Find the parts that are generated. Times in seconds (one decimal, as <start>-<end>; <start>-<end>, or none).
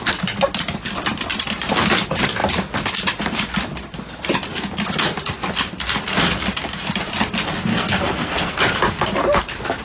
7.7-8.6